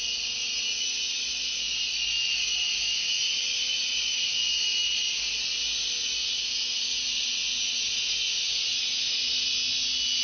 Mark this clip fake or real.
real